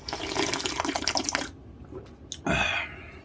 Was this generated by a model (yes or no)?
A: no